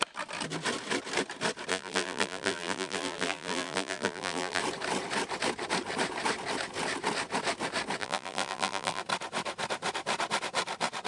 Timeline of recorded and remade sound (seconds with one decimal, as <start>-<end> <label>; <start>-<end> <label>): 0.0-1.7 recorded; 1.7-4.6 remade; 4.6-8.0 recorded; 8.0-9.0 remade; 9.0-11.1 recorded

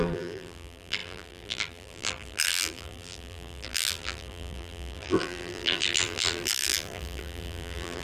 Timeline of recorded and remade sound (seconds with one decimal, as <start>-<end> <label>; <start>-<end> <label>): 0.0-8.0 remade

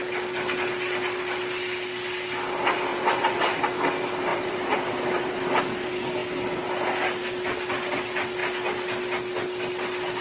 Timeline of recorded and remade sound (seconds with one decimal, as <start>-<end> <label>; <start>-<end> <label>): 0.0-2.9 recorded; 2.9-3.6 remade; 3.6-4.3 recorded; 4.3-5.6 remade; 5.6-10.2 recorded

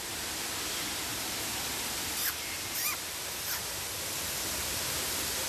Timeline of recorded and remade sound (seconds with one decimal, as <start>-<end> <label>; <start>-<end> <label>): 0.0-1.1 recorded; 1.1-2.7 remade; 2.7-5.5 recorded

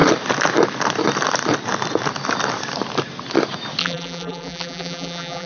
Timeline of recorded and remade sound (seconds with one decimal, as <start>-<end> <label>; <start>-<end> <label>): 0.0-3.8 recorded; 3.8-5.5 remade

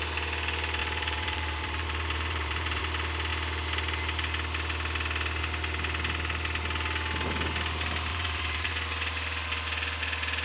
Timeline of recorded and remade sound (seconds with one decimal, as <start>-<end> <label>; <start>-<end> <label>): 0.0-0.8 recorded; 0.8-2.8 remade; 2.8-8.1 recorded; 8.1-8.7 remade; 8.7-10.4 recorded